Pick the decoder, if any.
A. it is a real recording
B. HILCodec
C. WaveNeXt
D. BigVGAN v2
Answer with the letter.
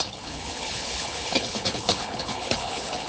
B